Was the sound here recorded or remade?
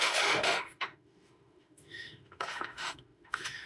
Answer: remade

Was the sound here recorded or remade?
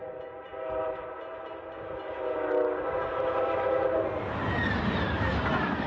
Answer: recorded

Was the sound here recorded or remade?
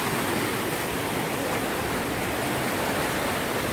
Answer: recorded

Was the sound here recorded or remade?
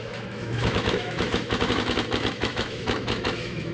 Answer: remade